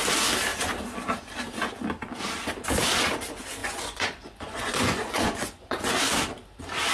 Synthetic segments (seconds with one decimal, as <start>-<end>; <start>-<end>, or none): 3.6-6.0